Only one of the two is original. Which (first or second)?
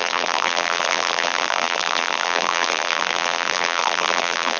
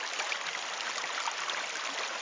second